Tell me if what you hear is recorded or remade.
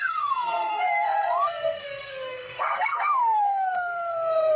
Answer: remade